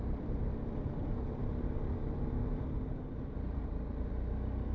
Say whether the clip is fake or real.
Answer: fake